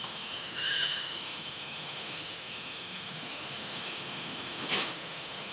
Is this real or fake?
fake